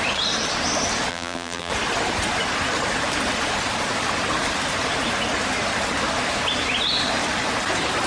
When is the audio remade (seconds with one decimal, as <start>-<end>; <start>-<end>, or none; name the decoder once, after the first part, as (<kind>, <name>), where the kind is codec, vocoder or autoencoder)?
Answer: 1.1-1.7 (vocoder, BigVGAN v2)